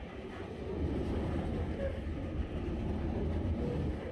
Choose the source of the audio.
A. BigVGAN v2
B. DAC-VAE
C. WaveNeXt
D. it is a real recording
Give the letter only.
D